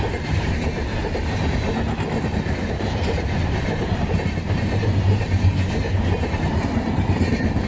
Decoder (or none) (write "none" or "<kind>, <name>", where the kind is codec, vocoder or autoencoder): vocoder, BigVGAN v2